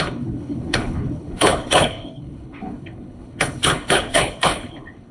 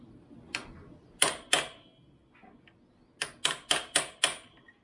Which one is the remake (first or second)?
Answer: first